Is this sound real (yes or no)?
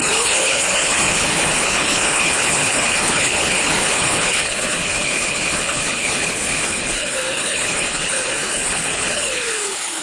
no